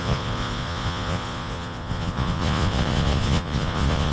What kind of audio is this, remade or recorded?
remade